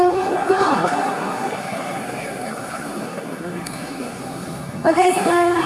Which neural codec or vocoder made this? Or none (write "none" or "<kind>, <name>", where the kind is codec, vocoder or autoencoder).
codec, SNAC